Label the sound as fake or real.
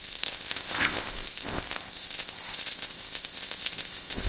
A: fake